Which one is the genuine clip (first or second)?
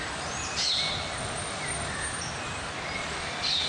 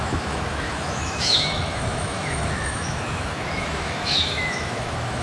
first